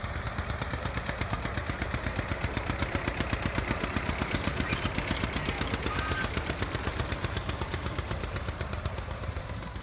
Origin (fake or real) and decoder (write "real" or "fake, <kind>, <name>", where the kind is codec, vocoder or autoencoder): fake, vocoder, BigVGAN v2